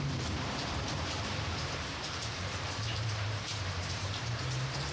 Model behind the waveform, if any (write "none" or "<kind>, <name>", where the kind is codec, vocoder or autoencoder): vocoder, BigVGAN v2